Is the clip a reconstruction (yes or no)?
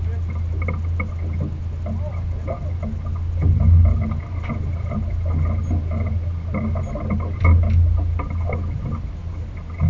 no